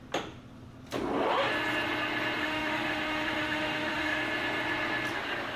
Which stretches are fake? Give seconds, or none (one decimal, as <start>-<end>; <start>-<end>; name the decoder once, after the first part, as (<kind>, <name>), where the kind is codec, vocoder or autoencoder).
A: 2.4-4.2 (autoencoder, DAC-VAE)